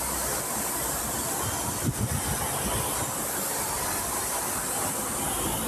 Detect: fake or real real